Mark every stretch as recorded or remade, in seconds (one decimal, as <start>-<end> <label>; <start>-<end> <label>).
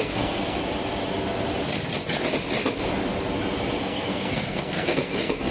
0.0-0.6 remade; 0.6-3.8 recorded; 3.8-5.5 remade